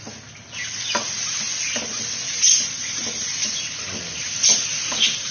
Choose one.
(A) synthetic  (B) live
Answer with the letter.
B